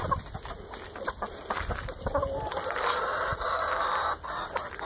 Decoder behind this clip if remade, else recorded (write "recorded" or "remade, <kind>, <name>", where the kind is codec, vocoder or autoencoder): recorded